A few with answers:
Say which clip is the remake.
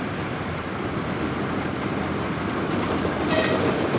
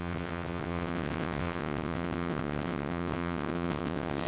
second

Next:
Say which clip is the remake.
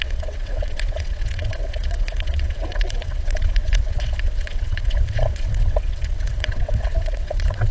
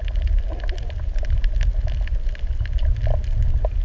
first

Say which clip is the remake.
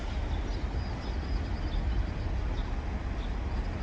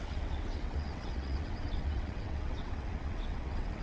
second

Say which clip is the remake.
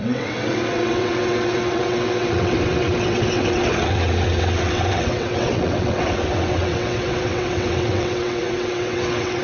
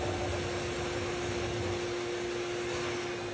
first